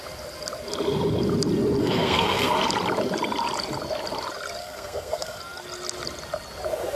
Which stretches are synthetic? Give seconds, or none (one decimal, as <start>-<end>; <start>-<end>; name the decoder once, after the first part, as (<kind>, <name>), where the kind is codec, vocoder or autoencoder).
1.8-2.5 (codec, SNAC); 4.6-5.4

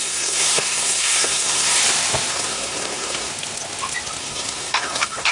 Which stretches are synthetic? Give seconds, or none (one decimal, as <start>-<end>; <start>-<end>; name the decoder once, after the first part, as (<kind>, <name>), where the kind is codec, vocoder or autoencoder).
0.0-1.8 (codec, SNAC); 2.3-3.3; 4.2-5.3

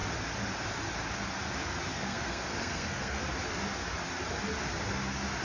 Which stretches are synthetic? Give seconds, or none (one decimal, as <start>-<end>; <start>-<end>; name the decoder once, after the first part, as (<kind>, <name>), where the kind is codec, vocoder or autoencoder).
1.9-3.2 (codec, SNAC)